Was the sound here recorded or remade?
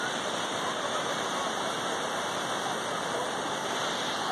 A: recorded